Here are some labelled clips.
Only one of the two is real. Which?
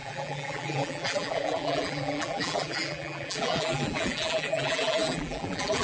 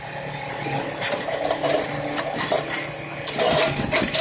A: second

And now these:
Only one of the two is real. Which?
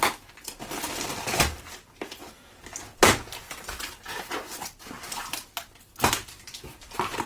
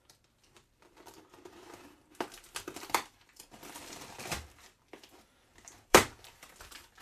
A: first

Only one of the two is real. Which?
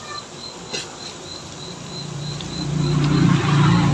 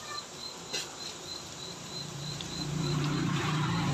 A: first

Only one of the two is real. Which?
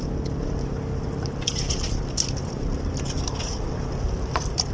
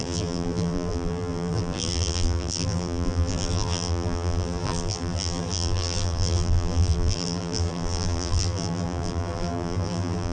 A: first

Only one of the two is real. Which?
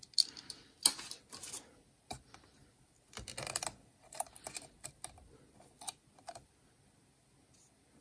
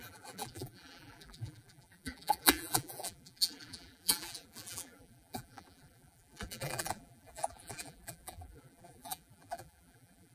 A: first